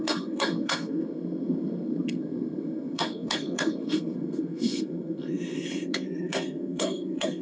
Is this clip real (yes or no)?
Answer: no